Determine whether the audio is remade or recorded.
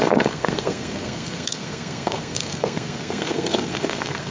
remade